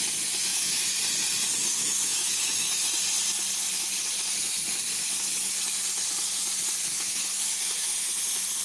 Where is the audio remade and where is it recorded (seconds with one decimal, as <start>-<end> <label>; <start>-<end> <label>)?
0.0-0.5 recorded; 0.5-1.0 remade; 1.0-1.6 recorded; 1.6-2.9 remade; 2.9-6.9 recorded; 6.9-8.2 remade; 8.2-8.6 recorded